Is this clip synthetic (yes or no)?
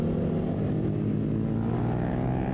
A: no